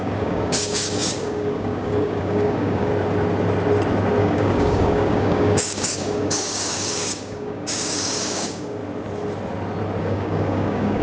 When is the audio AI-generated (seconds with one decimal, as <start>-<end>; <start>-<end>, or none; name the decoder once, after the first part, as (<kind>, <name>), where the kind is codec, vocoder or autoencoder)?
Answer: 0.0-2.9 (codec, DAC); 4.2-8.8; 10.0-11.0